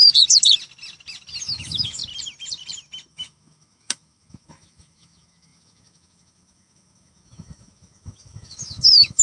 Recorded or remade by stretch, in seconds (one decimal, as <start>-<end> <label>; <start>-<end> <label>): 0.0-1.4 recorded; 1.4-2.0 remade; 2.0-3.1 recorded; 3.1-9.2 remade